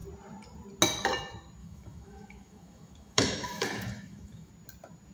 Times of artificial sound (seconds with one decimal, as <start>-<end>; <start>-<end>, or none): 1.6-4.5